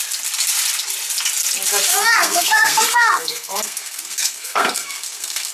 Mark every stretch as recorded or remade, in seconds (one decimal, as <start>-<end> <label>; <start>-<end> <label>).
0.0-1.9 recorded; 1.9-5.5 remade